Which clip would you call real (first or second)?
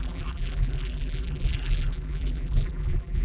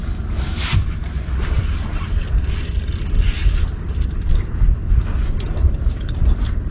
second